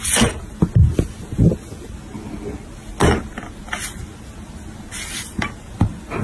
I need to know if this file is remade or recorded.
recorded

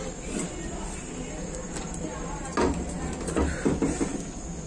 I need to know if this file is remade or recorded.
recorded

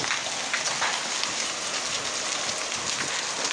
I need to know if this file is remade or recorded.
recorded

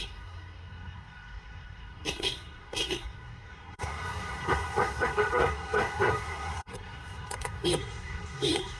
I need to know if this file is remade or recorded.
remade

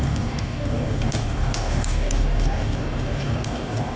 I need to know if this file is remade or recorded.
remade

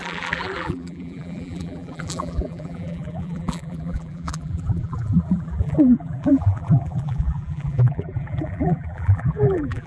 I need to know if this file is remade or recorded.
remade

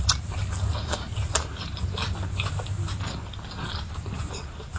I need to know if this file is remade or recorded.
recorded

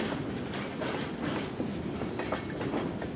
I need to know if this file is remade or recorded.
recorded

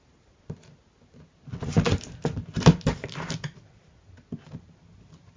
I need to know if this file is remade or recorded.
recorded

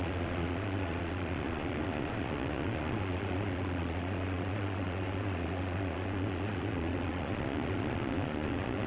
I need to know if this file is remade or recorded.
remade